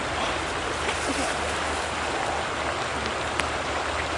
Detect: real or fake real